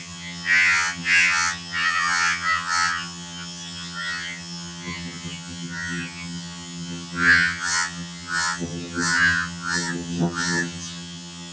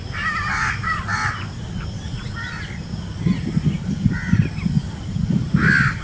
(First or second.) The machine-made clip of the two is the first